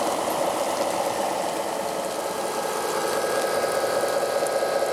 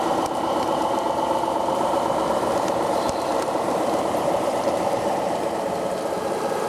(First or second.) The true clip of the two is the first